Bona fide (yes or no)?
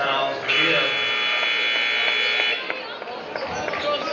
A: yes